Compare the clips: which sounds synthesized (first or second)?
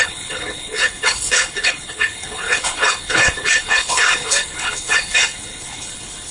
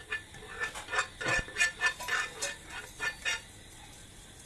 first